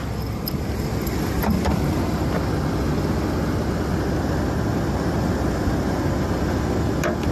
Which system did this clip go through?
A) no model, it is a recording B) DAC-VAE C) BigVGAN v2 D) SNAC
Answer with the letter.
A